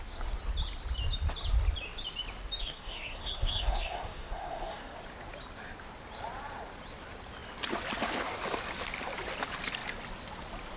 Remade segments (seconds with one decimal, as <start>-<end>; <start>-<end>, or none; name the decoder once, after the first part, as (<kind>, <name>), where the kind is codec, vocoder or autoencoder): 2.6-5.0 (codec, SNAC)